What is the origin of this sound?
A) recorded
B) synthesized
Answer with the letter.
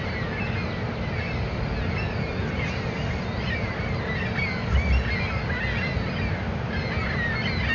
A